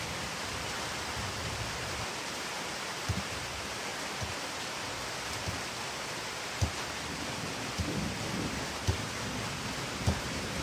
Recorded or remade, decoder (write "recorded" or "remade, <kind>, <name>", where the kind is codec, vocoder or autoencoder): remade, vocoder, BigVGAN v2